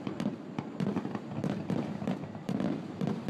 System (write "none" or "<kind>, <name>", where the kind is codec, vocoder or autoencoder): vocoder, BigVGAN v2